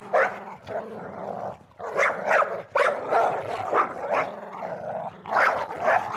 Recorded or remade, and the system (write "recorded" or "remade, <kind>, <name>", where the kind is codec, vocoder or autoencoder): recorded